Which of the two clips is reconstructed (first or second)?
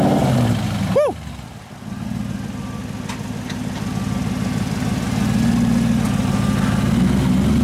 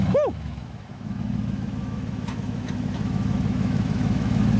second